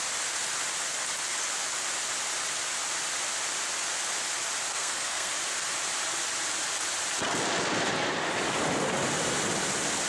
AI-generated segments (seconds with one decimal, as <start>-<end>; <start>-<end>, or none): 4.7-5.3